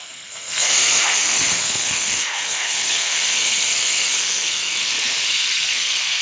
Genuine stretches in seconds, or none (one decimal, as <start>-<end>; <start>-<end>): none